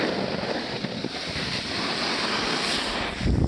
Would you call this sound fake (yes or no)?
no